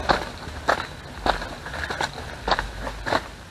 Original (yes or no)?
yes